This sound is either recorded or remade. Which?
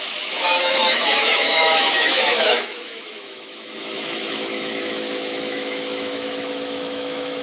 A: remade